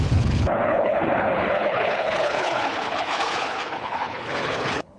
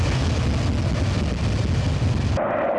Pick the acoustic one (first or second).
second